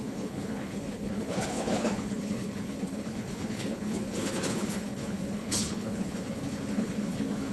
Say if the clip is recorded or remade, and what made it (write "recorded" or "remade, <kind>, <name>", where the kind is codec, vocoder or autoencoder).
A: remade, codec, HILCodec